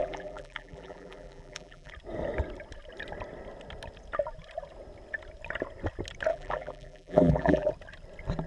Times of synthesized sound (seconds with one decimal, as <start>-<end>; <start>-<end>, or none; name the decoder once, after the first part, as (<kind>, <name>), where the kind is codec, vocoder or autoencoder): 0.0-1.9 (vocoder, BigVGAN v2); 6.3-7.7